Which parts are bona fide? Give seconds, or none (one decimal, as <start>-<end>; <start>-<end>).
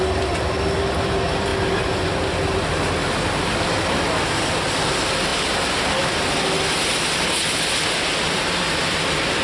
0.0-9.4